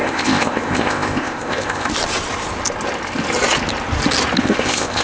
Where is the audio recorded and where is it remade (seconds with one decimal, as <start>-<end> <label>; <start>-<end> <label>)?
0.0-1.9 remade; 1.9-4.4 recorded; 4.4-5.0 remade